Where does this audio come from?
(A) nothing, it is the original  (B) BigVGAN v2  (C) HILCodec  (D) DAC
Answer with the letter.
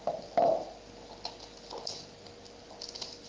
A